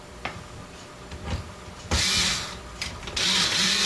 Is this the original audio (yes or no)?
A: no